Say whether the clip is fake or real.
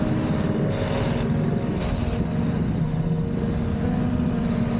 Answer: real